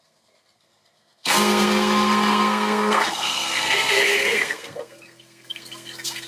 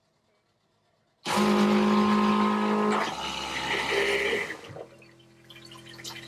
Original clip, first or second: second